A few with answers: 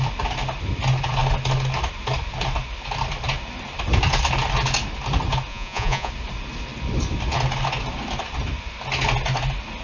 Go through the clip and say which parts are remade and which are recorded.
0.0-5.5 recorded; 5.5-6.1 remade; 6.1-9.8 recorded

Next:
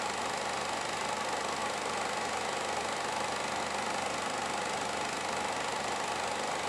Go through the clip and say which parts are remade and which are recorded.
0.0-6.7 recorded